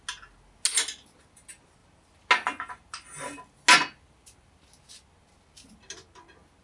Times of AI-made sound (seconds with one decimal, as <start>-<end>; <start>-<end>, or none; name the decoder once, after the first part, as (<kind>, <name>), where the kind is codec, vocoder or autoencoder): none